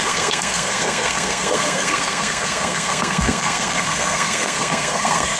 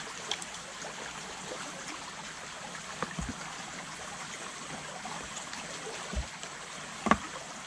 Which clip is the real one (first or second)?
second